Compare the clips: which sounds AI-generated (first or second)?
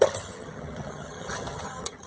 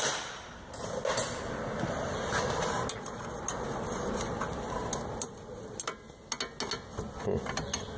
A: first